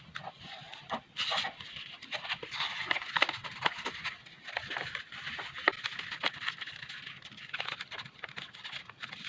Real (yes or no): yes